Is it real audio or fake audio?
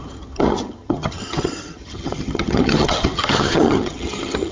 fake